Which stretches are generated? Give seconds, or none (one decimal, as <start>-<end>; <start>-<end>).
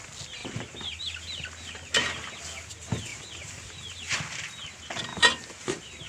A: 0.4-1.0; 3.1-4.1; 5.1-6.1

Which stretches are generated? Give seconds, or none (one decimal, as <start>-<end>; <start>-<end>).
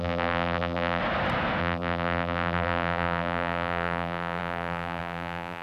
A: 0.0-1.0; 1.6-5.6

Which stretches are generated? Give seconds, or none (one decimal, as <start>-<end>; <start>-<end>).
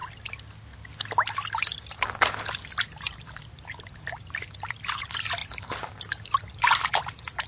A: 4.1-7.5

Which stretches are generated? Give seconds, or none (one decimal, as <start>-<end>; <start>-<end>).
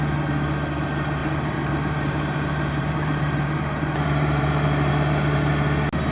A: 1.2-4.9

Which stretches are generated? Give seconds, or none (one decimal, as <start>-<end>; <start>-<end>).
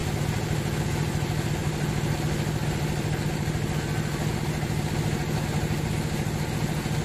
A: none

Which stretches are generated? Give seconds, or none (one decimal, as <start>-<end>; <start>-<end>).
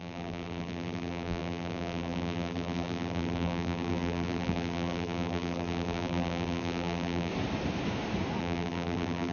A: 0.0-7.3; 8.4-9.3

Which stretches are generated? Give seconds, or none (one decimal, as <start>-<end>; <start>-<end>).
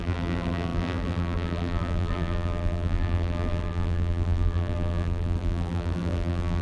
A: 0.0-6.6